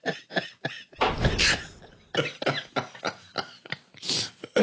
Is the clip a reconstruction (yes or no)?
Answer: no